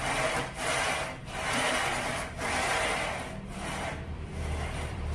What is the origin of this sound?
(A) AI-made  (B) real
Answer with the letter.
A